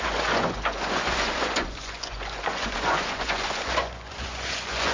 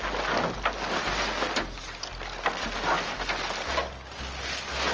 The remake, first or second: first